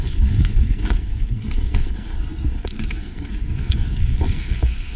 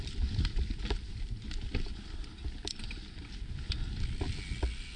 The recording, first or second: second